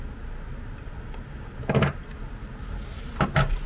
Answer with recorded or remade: recorded